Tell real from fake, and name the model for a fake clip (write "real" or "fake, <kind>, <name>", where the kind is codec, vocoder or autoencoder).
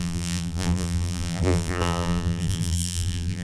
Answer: fake, vocoder, BigVGAN v2